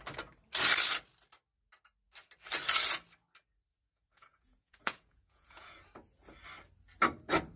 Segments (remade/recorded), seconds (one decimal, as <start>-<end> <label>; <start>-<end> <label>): 0.0-3.7 recorded; 3.7-5.8 remade; 5.8-7.6 recorded